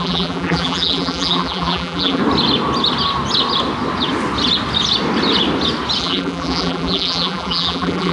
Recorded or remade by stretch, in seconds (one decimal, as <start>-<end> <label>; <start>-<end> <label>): 0.0-2.2 remade; 2.2-6.0 recorded; 6.0-8.1 remade